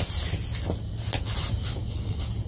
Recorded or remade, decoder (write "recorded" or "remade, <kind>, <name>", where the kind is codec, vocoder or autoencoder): recorded